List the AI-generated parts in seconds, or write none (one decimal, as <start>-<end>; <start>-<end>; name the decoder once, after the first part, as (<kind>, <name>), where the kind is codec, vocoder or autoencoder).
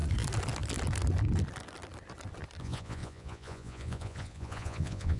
2.6-5.2 (vocoder, Vocos)